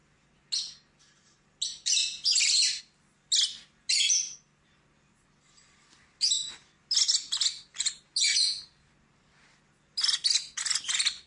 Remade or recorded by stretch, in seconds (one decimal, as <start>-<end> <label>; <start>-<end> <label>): 0.0-11.3 recorded